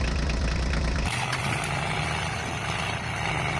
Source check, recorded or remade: recorded